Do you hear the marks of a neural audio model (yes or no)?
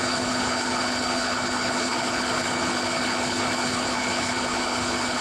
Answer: yes